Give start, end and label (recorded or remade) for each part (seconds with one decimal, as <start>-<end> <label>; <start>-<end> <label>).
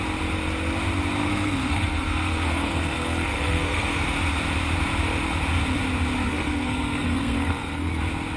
0.0-1.2 recorded; 1.2-4.0 remade; 4.0-6.2 recorded; 6.2-8.0 remade; 8.0-8.4 recorded